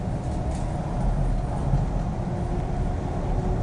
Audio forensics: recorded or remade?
recorded